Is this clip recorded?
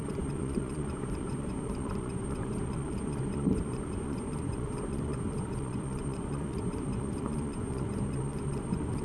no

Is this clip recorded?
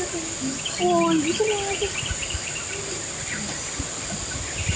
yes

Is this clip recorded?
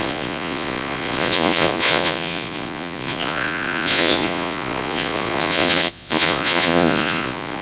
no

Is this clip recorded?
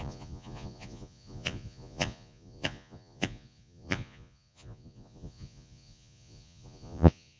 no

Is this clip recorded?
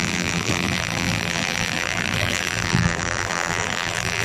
no